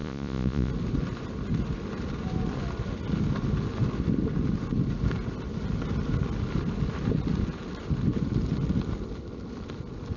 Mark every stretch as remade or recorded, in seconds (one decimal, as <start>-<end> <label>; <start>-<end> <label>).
0.0-0.7 remade; 0.7-10.2 recorded